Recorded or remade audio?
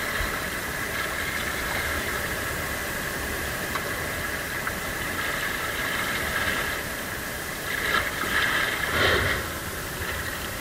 remade